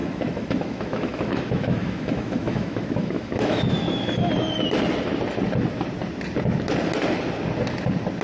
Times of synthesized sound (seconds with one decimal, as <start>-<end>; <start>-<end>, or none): 0.0-4.3